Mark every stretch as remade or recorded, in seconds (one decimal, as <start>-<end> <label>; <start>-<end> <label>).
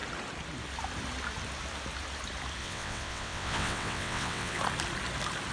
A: 0.0-2.6 recorded; 2.6-4.6 remade; 4.6-5.5 recorded